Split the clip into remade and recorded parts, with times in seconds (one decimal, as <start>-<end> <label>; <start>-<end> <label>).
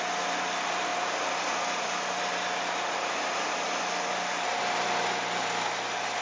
0.0-6.2 recorded